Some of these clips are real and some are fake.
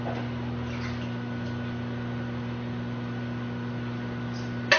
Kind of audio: real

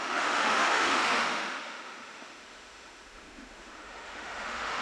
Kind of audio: fake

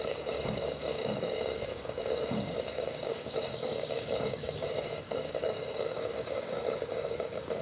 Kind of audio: fake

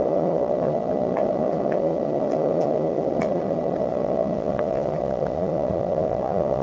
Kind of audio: fake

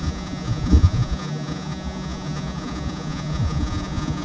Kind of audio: fake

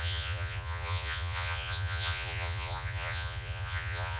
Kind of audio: fake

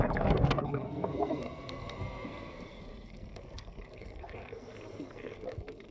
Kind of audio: fake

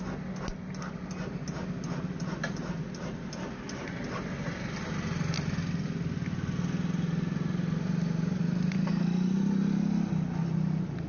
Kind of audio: real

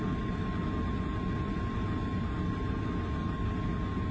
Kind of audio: real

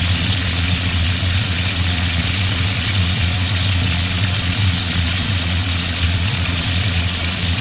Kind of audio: fake